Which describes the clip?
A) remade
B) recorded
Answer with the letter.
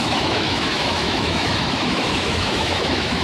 A